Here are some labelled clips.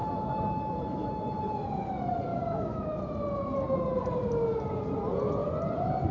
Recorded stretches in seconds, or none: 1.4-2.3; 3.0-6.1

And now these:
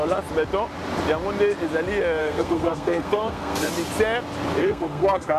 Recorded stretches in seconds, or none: 0.0-2.2; 3.7-4.6

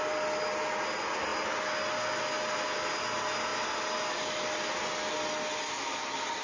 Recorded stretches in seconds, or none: 0.0-6.4

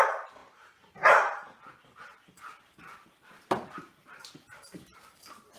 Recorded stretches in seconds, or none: 0.0-0.4; 1.6-2.1; 5.1-5.6